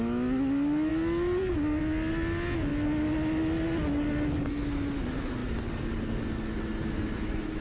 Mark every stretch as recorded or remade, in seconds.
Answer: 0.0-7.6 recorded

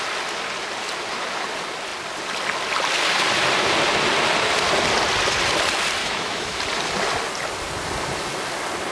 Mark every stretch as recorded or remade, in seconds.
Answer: 0.0-6.0 recorded; 6.0-6.6 remade; 6.6-8.9 recorded